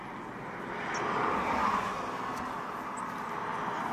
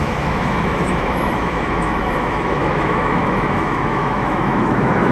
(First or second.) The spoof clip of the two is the second